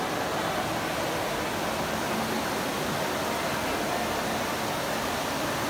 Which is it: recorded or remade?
recorded